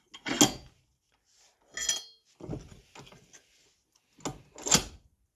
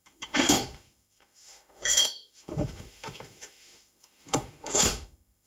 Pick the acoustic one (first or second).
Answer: first